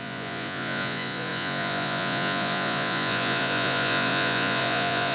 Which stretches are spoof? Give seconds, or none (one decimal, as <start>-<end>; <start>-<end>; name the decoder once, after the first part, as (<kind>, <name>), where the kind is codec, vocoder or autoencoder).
0.0-5.1 (vocoder, Vocos)